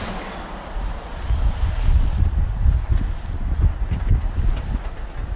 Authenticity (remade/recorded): remade